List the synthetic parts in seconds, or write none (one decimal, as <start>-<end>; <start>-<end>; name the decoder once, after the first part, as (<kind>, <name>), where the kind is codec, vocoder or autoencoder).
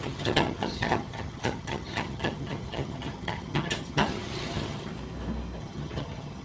0.0-4.9 (vocoder, HiFi-GAN); 5.6-6.4